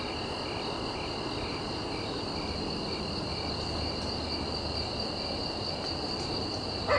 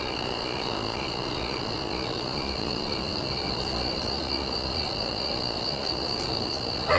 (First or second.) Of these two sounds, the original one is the first